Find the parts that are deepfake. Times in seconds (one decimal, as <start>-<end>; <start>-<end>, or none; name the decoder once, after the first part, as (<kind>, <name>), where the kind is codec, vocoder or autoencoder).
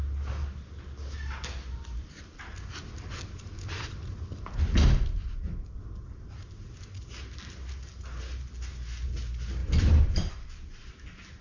none